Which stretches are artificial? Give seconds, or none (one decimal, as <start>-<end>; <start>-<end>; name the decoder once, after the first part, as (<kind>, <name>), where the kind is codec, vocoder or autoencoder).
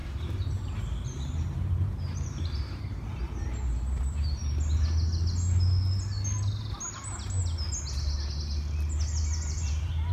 0.0-4.4 (vocoder, BigVGAN v2); 9.5-10.1